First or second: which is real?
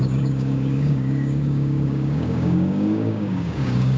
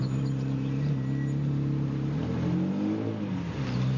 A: second